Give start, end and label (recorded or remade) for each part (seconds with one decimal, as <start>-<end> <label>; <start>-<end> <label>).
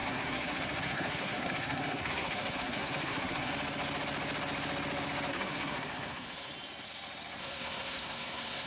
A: 0.0-3.5 remade; 3.5-5.3 recorded; 5.3-6.5 remade; 6.5-7.4 recorded; 7.4-8.7 remade